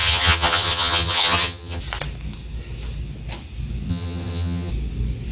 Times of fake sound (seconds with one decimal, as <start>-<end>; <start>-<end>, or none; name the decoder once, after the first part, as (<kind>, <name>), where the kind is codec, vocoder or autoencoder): 0.0-1.8 (vocoder, HiFi-GAN); 3.9-4.7